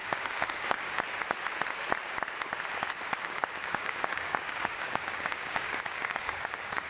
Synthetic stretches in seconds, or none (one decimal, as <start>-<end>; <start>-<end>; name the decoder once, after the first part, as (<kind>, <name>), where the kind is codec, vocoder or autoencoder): 0.0-1.0 (codec, DAC); 3.2-6.9